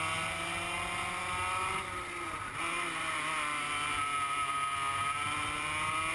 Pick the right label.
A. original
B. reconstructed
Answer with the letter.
A